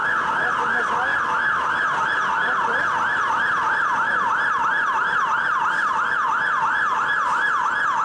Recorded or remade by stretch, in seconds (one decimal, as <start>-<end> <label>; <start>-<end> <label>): 0.0-8.0 recorded